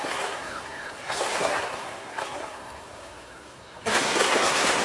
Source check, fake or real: fake